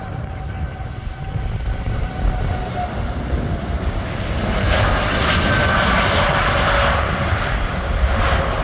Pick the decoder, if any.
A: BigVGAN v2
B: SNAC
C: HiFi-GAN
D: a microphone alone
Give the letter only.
D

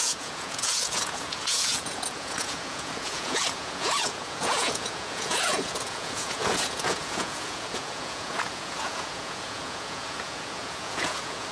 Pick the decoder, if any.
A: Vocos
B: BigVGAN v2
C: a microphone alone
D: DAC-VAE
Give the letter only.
A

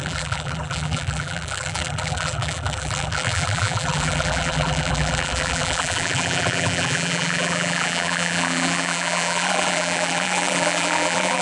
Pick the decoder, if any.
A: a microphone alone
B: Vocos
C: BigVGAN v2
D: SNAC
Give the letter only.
C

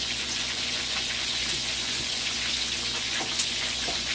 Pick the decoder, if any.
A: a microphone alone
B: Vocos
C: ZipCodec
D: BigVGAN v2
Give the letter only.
B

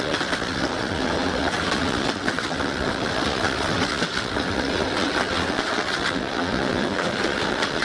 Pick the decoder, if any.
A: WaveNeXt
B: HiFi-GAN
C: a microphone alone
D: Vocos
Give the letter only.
A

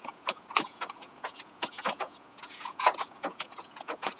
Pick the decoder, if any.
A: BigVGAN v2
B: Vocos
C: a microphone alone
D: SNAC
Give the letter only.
B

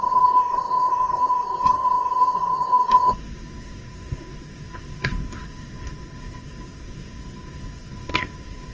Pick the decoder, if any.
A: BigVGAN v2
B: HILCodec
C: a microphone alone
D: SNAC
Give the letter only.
D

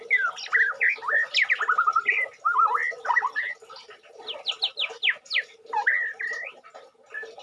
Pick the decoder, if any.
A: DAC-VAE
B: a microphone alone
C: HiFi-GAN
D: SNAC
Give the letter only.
B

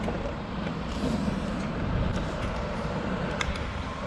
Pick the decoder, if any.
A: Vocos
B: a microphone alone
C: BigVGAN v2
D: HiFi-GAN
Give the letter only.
C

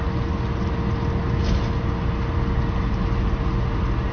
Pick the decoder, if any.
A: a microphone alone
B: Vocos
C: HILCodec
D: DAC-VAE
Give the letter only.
A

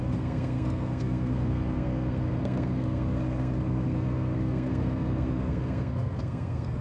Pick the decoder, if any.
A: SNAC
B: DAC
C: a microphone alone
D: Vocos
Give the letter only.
A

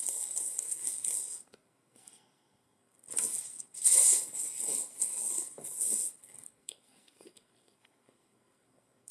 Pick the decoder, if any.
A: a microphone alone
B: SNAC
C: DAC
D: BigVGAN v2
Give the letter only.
B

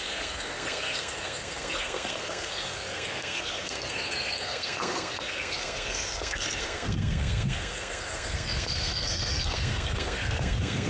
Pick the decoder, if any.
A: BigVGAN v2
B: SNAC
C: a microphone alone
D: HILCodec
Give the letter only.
B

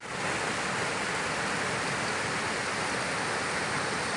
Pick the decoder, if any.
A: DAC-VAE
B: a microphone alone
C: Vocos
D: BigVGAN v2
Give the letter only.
B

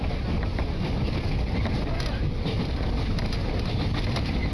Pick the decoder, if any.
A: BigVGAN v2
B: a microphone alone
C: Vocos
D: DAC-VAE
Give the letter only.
B